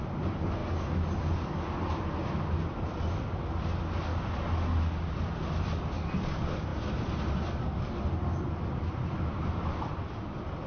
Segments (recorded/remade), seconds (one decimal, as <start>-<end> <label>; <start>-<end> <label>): 0.0-10.7 recorded